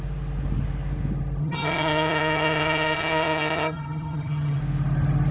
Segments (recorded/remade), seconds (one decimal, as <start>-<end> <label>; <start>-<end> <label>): 0.0-1.4 recorded; 1.4-4.6 remade; 4.6-5.3 recorded